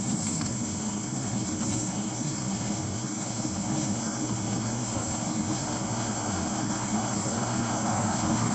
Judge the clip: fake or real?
fake